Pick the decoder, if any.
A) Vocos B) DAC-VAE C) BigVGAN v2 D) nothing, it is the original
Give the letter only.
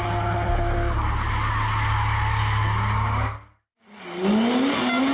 D